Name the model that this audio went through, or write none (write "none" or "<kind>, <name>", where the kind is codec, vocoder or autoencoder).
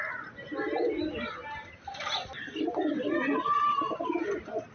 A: none